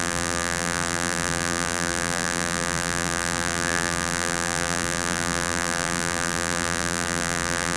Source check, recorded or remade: remade